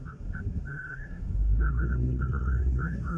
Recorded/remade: remade